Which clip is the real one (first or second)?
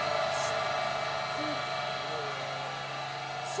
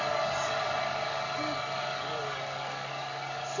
first